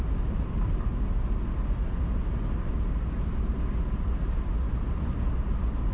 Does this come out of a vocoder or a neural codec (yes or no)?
no